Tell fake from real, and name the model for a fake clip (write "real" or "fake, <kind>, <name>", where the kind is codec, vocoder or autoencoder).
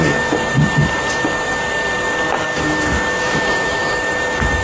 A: fake, vocoder, BigVGAN v2